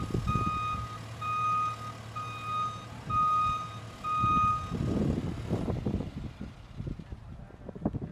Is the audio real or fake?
real